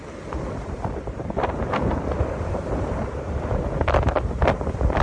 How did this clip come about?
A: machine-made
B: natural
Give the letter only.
B